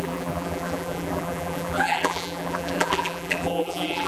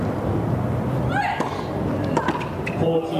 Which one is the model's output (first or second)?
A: first